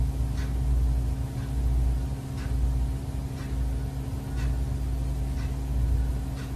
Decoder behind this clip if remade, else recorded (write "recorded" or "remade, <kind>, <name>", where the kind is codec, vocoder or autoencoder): recorded